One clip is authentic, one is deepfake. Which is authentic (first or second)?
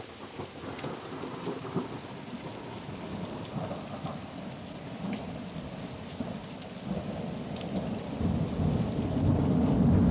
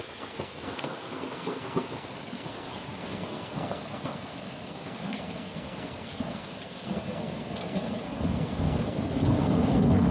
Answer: first